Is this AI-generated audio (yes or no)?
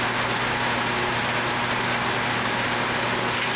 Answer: no